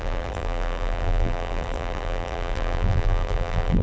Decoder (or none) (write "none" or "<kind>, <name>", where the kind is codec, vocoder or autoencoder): vocoder, BigVGAN v2